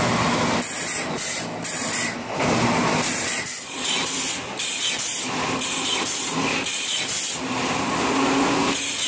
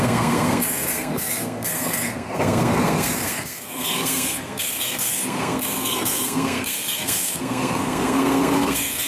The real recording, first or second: first